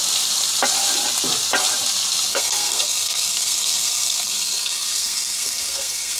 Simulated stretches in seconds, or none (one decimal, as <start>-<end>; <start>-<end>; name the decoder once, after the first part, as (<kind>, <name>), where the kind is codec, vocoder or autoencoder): 2.3-6.2 (codec, SNAC)